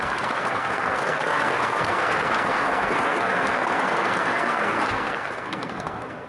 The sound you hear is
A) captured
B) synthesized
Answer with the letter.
B